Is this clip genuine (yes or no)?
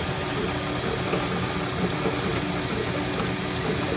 yes